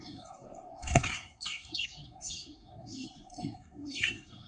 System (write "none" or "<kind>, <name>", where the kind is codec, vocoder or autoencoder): codec, SNAC